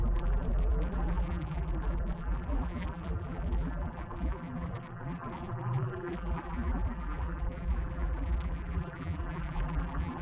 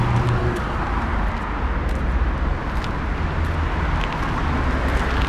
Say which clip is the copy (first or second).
first